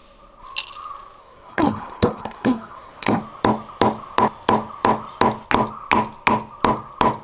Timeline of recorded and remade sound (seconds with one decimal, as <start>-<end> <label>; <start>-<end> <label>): 0.0-1.2 recorded; 1.2-3.2 remade; 3.2-7.2 recorded